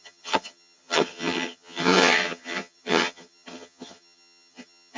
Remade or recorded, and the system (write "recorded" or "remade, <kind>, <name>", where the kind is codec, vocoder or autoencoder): remade, vocoder, HiFi-GAN